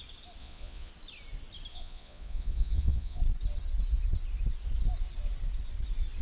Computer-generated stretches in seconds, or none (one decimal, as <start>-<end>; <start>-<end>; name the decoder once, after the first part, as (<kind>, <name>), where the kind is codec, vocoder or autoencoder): 0.4-0.9 (vocoder, Vocos); 1.7-3.2